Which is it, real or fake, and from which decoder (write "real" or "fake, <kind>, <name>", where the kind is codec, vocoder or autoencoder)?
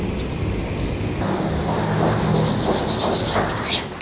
real